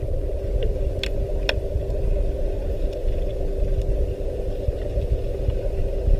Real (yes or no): yes